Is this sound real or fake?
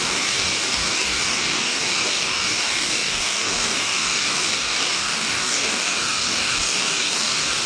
fake